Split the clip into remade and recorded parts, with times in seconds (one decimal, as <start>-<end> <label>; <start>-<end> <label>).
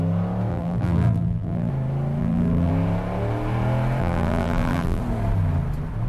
0.0-0.5 recorded; 0.5-1.7 remade; 1.7-2.2 recorded; 2.2-2.7 remade; 2.7-4.0 recorded; 4.0-5.0 remade; 5.0-6.1 recorded